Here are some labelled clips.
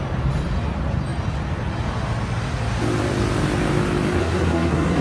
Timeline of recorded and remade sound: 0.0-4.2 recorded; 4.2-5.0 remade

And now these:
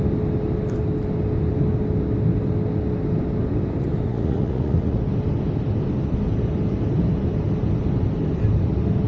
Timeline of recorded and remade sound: 0.0-4.1 recorded; 4.1-5.0 remade; 5.0-9.1 recorded

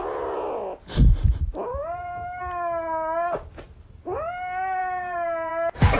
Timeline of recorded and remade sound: 0.0-1.8 recorded; 1.8-2.4 remade; 2.4-4.8 recorded; 4.8-5.5 remade; 5.5-6.0 recorded

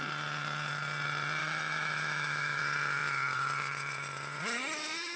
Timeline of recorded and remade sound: 0.0-1.4 recorded; 1.4-2.6 remade; 2.6-5.2 recorded

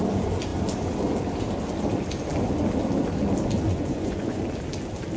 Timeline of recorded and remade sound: 0.0-3.7 recorded; 3.7-4.4 remade; 4.4-5.2 recorded

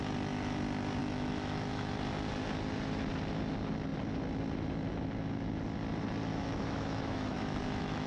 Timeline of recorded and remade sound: 0.0-1.0 recorded; 1.0-1.9 remade; 1.9-6.3 recorded; 6.3-8.1 remade

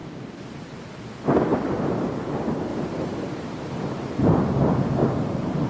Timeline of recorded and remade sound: 0.0-2.7 recorded; 2.7-4.3 remade; 4.3-5.0 recorded; 5.0-5.7 remade